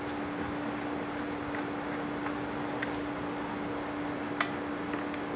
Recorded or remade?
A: recorded